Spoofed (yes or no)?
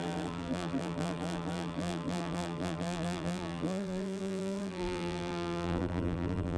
yes